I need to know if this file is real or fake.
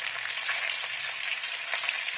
real